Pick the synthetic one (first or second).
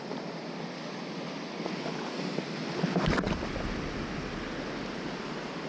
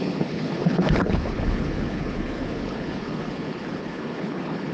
second